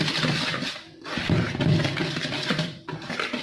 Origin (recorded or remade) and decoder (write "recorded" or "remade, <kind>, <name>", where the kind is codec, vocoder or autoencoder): remade, vocoder, BigVGAN v2